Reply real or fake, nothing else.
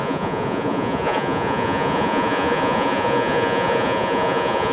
fake